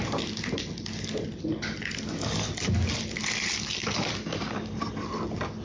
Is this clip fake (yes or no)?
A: no